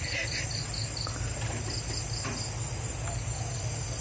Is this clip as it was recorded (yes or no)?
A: yes